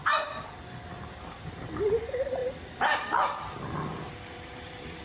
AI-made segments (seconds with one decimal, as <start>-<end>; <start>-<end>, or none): 0.0-1.5; 2.4-5.0